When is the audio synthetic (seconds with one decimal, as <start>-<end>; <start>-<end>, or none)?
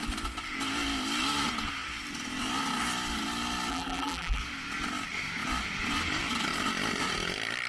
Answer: 3.7-4.4